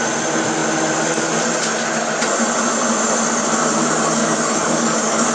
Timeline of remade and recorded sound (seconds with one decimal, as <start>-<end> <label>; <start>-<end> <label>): 0.0-4.2 recorded; 4.2-5.3 remade